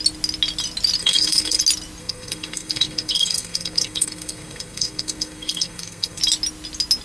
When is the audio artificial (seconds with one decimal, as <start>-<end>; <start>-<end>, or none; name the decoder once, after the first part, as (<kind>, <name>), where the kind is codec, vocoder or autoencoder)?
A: 1.0-1.6 (codec, SNAC); 2.0-6.2